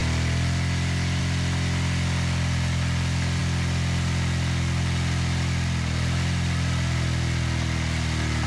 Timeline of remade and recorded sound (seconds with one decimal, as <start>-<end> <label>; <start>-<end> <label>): 0.0-8.5 recorded